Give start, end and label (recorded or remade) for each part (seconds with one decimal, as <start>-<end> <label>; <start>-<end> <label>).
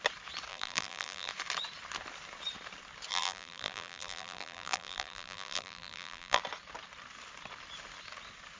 0.0-0.5 recorded; 0.5-1.3 remade; 1.3-3.1 recorded; 3.1-6.4 remade; 6.4-8.6 recorded